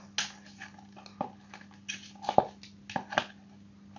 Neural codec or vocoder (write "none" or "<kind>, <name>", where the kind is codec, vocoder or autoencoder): none